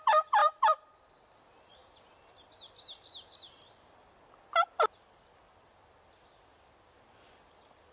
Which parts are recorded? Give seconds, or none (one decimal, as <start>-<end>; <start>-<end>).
none

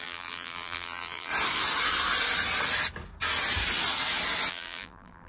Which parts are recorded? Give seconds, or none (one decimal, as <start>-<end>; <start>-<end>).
1.3-4.5

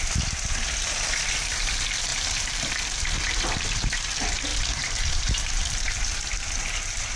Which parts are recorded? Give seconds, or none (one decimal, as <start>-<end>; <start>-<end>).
0.0-2.1; 2.7-4.5

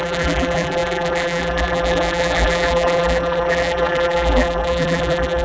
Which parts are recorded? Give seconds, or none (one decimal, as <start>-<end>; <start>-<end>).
none

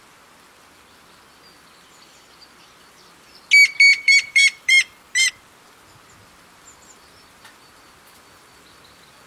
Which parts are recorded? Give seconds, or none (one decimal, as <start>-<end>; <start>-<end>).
0.0-3.9; 5.3-9.3

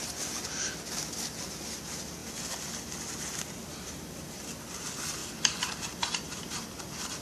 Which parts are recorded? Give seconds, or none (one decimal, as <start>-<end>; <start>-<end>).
0.0-2.2; 3.1-3.7; 4.5-5.2